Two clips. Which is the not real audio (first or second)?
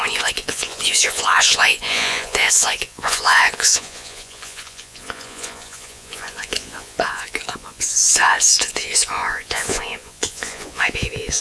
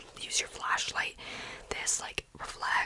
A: first